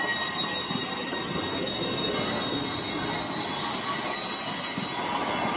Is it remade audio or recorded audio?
recorded